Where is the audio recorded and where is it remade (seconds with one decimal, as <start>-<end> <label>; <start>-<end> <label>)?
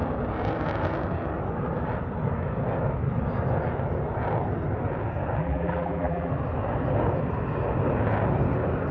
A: 0.0-5.4 recorded; 5.4-6.3 remade; 6.3-8.9 recorded